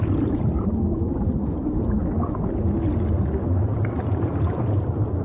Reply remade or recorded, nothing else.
recorded